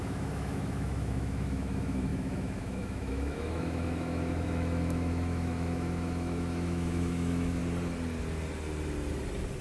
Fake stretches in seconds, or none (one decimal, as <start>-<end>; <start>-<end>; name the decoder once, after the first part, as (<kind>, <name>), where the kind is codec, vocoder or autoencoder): 0.0-7.6 (autoencoder, DAC-VAE)

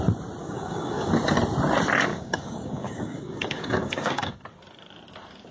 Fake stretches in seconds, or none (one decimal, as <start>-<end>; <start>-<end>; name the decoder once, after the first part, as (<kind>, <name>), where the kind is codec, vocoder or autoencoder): 0.4-1.1 (codec, DAC); 2.1-4.3

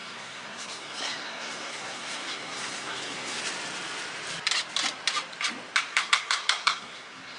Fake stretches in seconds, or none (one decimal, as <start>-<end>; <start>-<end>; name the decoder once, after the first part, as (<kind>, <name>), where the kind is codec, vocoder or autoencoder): 0.0-3.4 (codec, SNAC); 5.9-7.4

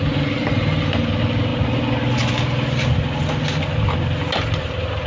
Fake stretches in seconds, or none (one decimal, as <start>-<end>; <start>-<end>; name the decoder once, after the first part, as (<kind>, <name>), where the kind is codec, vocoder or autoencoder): none